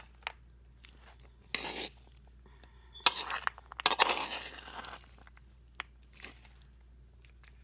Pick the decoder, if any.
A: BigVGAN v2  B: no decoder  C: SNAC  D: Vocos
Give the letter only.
B